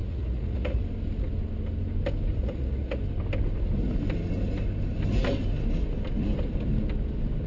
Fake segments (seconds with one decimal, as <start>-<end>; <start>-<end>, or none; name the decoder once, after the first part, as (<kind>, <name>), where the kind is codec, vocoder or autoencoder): 0.0-0.8 (vocoder, Vocos); 2.4-3.0